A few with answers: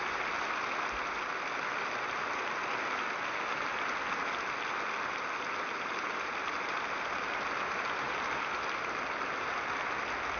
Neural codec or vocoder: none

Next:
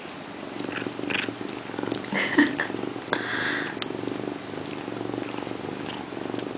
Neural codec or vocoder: none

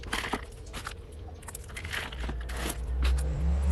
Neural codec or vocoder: none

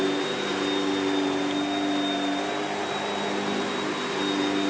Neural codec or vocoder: none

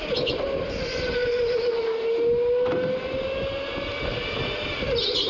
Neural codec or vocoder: none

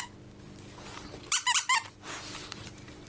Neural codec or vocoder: none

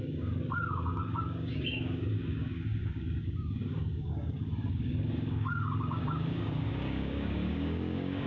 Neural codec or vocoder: codec, DAC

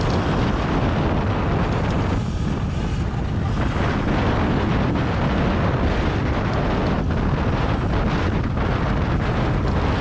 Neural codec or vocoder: none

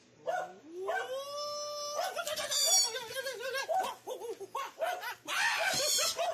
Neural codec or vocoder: none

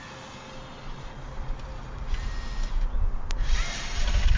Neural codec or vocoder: none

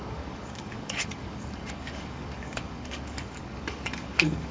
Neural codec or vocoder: codec, DAC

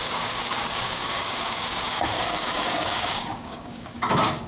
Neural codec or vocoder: codec, DAC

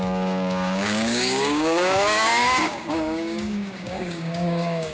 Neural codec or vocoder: codec, DAC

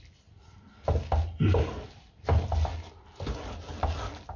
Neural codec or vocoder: none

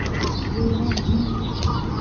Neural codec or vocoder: none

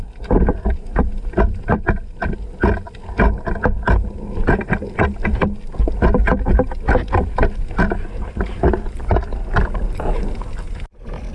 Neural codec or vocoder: none